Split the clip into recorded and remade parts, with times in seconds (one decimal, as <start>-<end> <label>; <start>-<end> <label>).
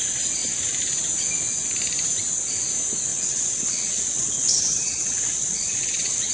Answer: 0.0-3.1 recorded; 3.1-6.3 remade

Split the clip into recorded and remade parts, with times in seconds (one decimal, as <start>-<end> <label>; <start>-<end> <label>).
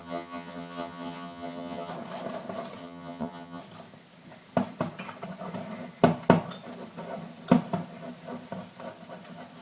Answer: 0.0-1.9 remade; 1.9-2.8 recorded; 2.8-3.6 remade; 3.6-9.6 recorded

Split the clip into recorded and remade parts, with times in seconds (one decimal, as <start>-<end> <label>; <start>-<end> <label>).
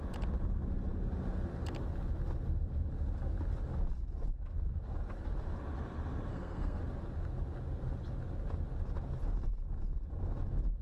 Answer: 0.0-6.3 recorded; 6.3-6.8 remade; 6.8-10.8 recorded